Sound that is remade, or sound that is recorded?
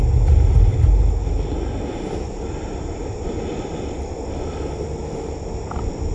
recorded